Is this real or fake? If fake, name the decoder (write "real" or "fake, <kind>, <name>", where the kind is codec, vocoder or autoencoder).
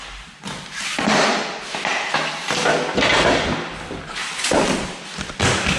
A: real